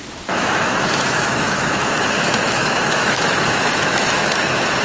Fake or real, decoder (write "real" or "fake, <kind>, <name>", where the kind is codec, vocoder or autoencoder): fake, autoencoder, DAC-VAE